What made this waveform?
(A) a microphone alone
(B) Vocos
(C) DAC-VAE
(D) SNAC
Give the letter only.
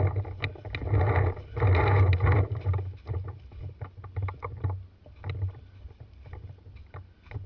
A